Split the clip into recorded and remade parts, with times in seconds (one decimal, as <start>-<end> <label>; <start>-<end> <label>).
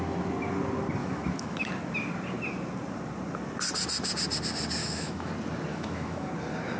0.0-1.0 recorded; 1.0-1.7 remade; 1.7-4.8 recorded; 4.8-5.3 remade; 5.3-5.7 recorded; 5.7-6.3 remade; 6.3-6.8 recorded